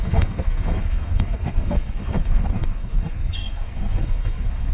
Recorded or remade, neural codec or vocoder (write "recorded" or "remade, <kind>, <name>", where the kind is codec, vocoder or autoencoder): remade, codec, SNAC